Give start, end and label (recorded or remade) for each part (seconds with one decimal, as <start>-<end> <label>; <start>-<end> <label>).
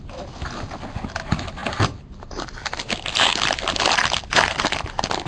0.0-5.3 recorded